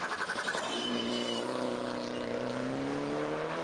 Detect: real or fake fake